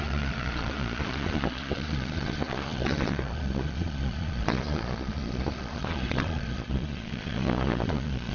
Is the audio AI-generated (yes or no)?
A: yes